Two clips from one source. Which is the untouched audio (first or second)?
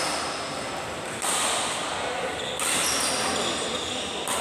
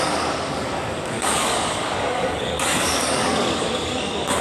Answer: first